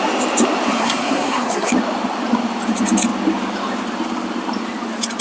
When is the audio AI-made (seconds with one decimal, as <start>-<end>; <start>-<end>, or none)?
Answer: 0.7-1.7